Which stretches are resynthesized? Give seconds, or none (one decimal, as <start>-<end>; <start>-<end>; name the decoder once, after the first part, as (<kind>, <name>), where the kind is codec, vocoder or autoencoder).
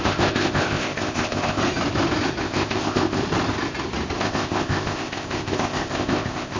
0.0-1.6 (codec, ZipCodec); 2.4-3.2; 4.2-6.6